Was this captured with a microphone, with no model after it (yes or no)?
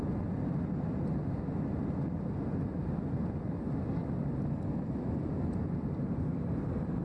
yes